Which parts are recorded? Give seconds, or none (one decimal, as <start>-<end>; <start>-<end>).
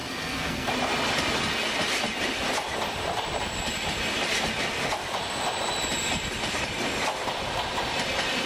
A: 0.7-8.5